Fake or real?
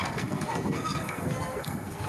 fake